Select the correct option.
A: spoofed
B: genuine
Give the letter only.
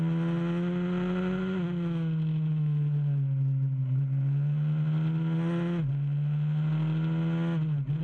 B